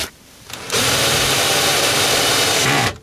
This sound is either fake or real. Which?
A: fake